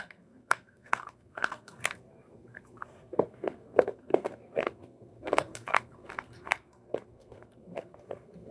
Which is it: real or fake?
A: fake